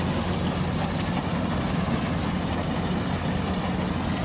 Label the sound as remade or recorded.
recorded